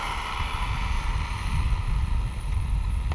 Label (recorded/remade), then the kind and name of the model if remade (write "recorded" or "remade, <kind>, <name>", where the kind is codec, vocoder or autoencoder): recorded